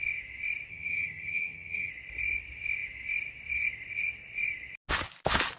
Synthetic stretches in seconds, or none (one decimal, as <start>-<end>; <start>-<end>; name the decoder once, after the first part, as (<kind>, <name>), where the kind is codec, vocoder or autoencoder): 0.7-1.9 (vocoder, HiFi-GAN)